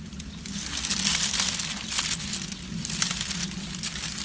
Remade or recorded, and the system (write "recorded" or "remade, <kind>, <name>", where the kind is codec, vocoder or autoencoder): recorded